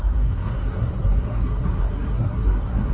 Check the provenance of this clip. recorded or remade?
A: remade